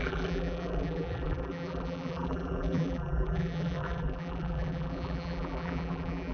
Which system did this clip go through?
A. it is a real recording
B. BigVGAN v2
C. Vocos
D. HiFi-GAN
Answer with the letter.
B